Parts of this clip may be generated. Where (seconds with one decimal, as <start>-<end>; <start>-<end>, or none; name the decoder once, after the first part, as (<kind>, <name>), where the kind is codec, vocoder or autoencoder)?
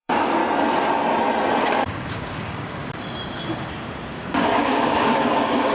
0.0-0.4 (codec, DAC); 1.6-2.8; 4.1-5.7